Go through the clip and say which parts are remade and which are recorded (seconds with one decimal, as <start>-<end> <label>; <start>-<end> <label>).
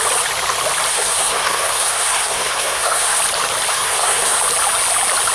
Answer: 0.0-0.9 recorded; 0.9-3.2 remade; 3.2-3.7 recorded; 3.7-4.4 remade; 4.4-5.3 recorded